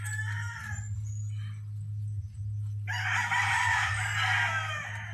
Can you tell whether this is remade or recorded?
recorded